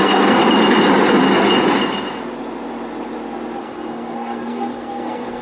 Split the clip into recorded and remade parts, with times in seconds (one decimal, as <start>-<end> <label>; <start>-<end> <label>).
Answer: 0.0-0.4 remade; 0.4-3.6 recorded; 3.6-5.4 remade